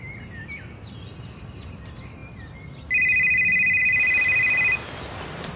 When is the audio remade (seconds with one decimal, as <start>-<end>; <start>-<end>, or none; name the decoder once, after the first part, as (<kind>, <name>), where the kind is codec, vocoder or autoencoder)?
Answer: none